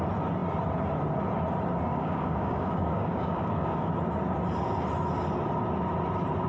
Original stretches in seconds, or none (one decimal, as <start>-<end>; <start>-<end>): 0.0-1.9; 3.9-6.5